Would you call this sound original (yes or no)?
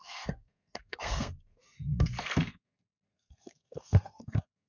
no